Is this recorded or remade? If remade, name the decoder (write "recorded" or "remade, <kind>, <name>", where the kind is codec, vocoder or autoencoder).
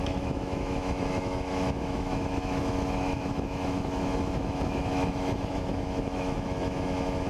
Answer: remade, autoencoder, DAC-VAE